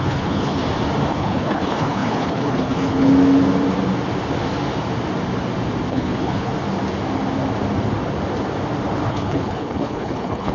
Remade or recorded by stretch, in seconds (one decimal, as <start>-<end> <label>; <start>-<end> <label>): 0.0-0.6 remade; 0.6-1.1 recorded; 1.1-3.1 remade; 3.1-5.9 recorded; 5.9-6.5 remade; 6.5-9.1 recorded; 9.1-10.5 remade